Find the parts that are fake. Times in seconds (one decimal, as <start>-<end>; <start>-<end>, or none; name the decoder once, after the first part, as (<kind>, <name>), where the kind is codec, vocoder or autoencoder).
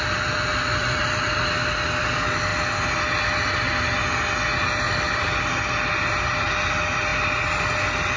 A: 0.5-1.2 (vocoder, BigVGAN v2)